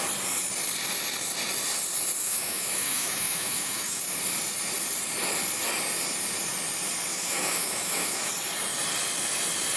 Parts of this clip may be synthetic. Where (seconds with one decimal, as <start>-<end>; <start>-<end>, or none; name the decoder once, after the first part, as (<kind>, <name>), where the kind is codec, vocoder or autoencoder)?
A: 2.2-4.0 (autoencoder, DAC-VAE); 7.1-8.3